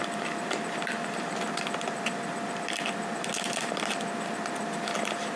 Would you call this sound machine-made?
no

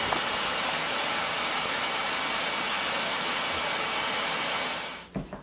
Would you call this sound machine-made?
no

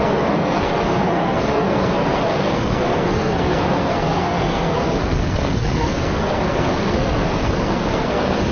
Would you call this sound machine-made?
yes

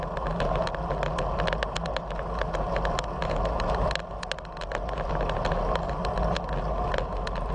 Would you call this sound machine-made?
no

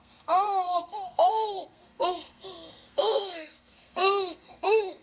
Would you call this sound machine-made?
yes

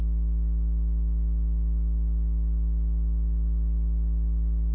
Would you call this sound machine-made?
no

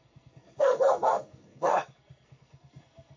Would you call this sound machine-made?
yes